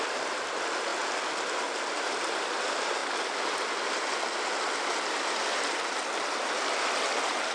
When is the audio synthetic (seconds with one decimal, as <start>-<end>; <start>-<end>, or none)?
none